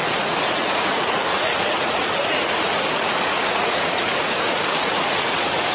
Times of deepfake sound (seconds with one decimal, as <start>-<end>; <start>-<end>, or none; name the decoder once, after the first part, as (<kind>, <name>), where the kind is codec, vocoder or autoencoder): 0.0-5.7 (vocoder, Vocos)